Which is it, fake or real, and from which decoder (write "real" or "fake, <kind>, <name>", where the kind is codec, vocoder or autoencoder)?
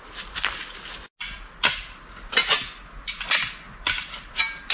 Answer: real